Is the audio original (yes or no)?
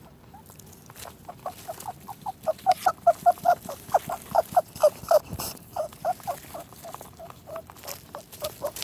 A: no